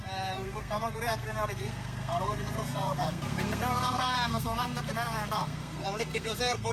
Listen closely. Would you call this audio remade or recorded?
remade